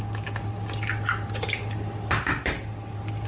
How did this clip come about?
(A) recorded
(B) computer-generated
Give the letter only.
B